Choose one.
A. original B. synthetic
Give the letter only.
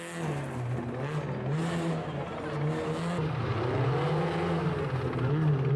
A